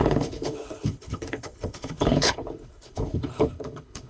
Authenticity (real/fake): fake